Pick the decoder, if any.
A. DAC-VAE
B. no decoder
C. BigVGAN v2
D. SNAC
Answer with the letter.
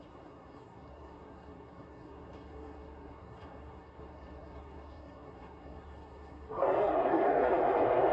D